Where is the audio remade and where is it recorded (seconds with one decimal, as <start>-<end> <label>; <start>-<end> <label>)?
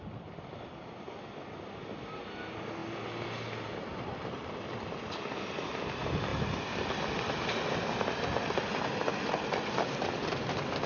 0.0-10.9 recorded